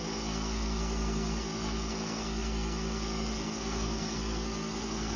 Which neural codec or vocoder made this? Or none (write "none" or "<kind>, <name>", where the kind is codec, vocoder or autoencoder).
codec, SNAC